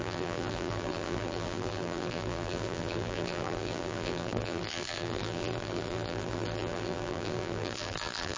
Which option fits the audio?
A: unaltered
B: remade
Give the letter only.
B